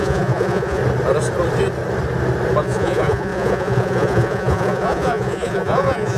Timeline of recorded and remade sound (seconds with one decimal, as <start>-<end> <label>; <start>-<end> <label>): 0.0-0.8 remade; 0.8-2.6 recorded; 2.6-6.2 remade